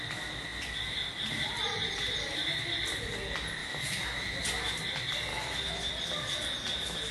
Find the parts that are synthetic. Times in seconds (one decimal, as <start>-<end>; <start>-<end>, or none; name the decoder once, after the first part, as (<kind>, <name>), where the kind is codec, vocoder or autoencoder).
3.6-4.4 (autoencoder, DAC-VAE); 5.3-5.9